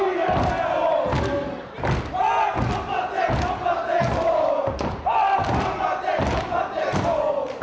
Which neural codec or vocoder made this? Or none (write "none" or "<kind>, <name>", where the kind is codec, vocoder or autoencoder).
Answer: none